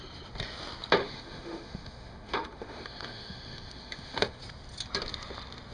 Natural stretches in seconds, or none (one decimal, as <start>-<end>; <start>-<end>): 0.0-1.0; 4.4-5.7